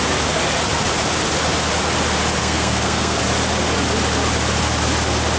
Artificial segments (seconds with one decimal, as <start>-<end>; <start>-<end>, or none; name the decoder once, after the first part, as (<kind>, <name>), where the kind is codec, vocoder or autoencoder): 2.4-3.2 (codec, SNAC)